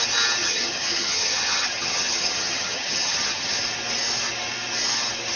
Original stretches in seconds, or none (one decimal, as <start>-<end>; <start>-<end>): 0.0-0.4; 3.6-5.4